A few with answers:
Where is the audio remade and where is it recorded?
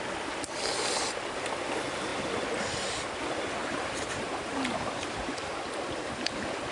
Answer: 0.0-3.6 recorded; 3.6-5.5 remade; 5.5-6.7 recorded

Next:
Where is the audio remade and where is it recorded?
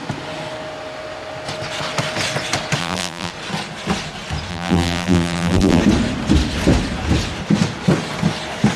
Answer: 0.0-2.8 recorded; 2.8-3.3 remade; 3.3-4.5 recorded; 4.5-5.8 remade; 5.8-8.8 recorded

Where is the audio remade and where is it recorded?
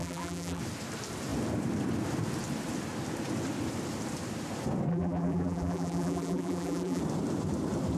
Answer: 0.0-0.6 remade; 0.6-4.9 recorded; 4.9-7.0 remade; 7.0-8.0 recorded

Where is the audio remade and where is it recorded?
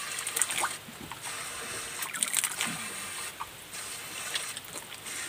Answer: 0.0-5.3 recorded